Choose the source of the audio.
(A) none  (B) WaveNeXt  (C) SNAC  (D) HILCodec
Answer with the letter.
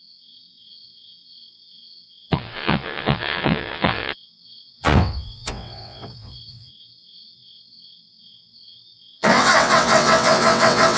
B